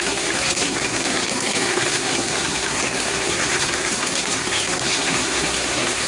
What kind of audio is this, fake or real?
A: fake